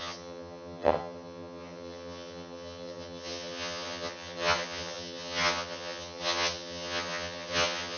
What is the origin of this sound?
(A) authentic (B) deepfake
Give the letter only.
B